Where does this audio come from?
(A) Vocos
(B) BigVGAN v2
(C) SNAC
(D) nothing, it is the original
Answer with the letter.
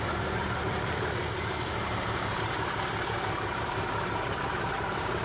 B